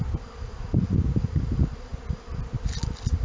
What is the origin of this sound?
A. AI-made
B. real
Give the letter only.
B